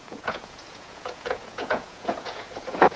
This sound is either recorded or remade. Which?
remade